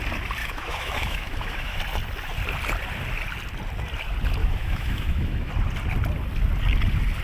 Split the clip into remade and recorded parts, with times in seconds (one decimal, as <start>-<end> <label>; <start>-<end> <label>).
0.0-0.4 recorded; 0.4-1.8 remade; 1.8-4.4 recorded; 4.4-5.5 remade; 5.5-7.2 recorded